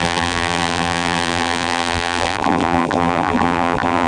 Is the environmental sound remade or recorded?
remade